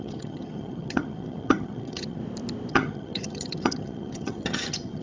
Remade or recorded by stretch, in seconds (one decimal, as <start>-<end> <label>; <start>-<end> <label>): 0.0-2.2 remade; 2.2-2.7 recorded; 2.7-5.0 remade